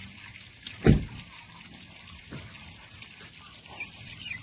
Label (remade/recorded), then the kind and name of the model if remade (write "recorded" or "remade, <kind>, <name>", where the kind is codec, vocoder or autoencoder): remade, vocoder, BigVGAN v2